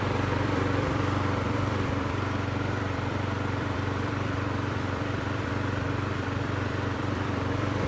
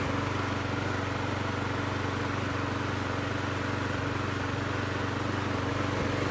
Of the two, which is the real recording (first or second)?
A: second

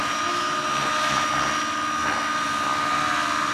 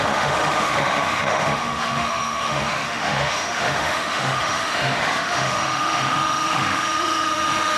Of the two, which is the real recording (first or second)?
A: first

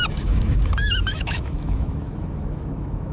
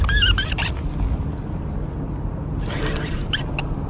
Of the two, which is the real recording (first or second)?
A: second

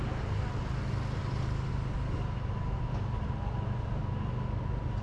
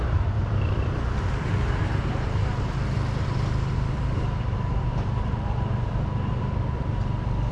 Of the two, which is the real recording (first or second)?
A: first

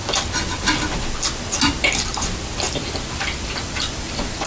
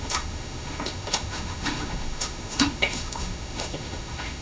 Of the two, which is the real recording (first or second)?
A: first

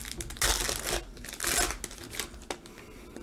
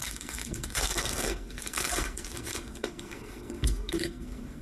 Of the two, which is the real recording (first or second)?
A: first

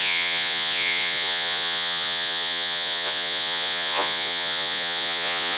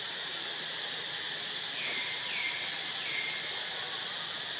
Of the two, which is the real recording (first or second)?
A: second